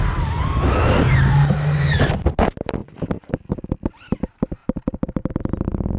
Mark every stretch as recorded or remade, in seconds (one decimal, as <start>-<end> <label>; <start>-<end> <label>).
0.0-6.0 recorded